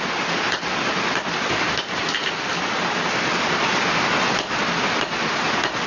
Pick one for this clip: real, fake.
real